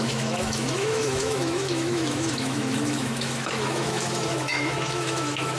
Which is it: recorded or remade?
remade